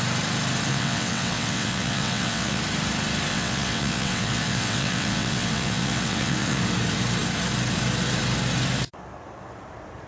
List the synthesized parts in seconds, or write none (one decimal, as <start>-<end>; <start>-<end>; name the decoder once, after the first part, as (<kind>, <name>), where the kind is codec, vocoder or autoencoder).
0.7-2.6 (vocoder, WaveNeXt); 3.3-6.6